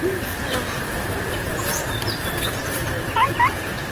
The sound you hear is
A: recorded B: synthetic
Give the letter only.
A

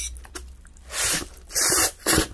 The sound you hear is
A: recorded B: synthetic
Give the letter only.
A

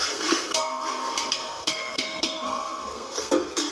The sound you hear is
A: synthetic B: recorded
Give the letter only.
A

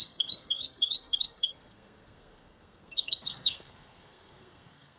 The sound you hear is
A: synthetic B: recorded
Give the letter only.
A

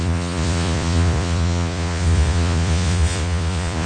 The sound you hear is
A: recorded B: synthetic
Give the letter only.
B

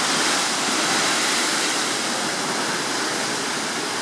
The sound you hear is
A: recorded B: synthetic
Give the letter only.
A